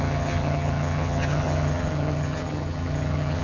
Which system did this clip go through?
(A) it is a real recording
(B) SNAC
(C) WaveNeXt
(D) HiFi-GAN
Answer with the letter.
D